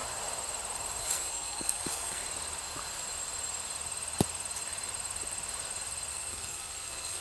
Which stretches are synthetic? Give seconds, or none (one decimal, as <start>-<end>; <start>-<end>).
1.0-2.2; 6.1-7.2